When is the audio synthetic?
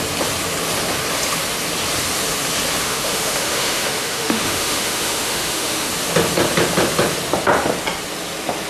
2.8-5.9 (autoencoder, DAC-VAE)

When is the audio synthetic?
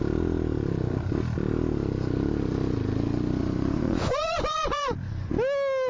3.4-5.3 (vocoder, Vocos)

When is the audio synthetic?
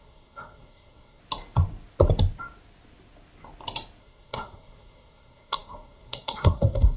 0.0-1.2 (codec, SNAC); 4.0-7.0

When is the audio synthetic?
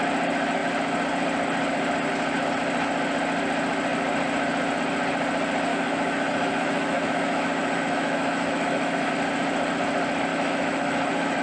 5.7-9.1 (autoencoder, DAC-VAE); 10.3-11.4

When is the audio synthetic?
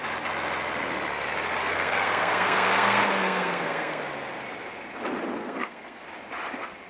1.6-4.0 (codec, SNAC); 5.4-6.0